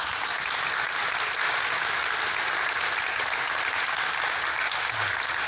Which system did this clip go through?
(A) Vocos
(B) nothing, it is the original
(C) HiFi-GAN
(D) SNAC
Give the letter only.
B